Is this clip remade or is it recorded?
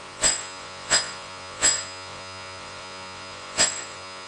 remade